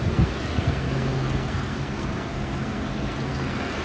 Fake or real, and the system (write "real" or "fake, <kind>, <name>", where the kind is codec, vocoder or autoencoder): fake, codec, SNAC